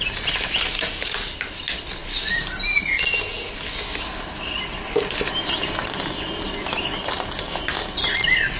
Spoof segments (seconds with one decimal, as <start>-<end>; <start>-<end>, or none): none